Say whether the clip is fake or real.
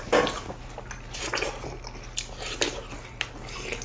real